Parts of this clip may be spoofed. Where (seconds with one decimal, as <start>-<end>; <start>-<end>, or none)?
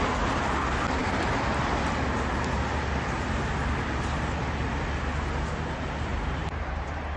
6.1-7.2